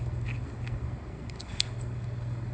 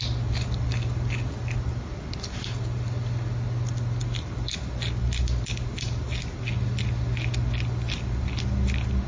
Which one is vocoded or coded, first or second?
first